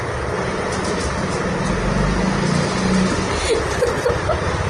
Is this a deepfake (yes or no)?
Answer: no